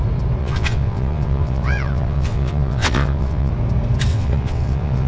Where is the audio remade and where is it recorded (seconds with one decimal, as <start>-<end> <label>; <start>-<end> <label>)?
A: 0.0-0.4 recorded; 0.4-3.5 remade; 3.5-4.1 recorded; 4.1-5.1 remade